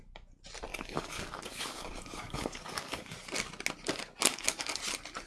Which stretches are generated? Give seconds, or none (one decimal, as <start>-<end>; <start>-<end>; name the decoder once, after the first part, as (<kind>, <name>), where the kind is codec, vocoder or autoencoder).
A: 0.7-3.1 (codec, DAC); 4.3-4.8